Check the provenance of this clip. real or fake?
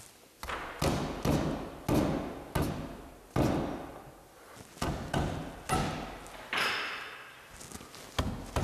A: real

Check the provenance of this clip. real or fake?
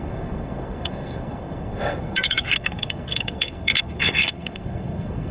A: fake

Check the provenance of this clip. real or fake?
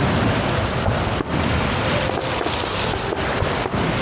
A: real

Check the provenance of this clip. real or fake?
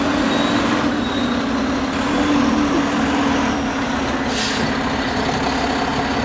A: real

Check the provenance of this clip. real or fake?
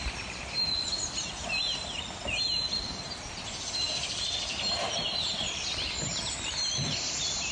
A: fake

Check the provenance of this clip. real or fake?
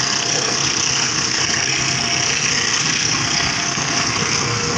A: fake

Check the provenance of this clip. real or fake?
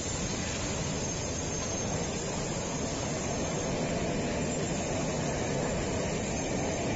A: real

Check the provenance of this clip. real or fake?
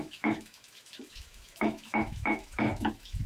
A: fake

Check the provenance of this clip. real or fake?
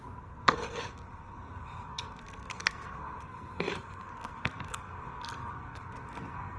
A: fake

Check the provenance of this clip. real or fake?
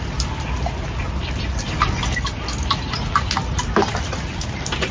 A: real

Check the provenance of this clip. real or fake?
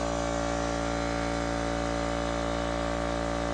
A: real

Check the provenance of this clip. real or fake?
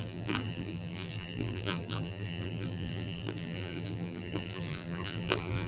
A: fake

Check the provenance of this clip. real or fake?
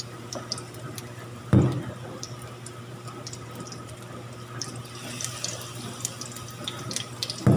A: fake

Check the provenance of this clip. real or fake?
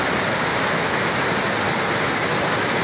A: real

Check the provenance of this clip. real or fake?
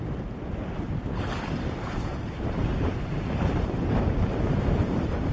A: fake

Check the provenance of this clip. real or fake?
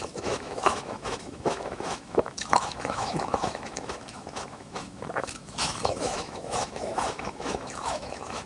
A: fake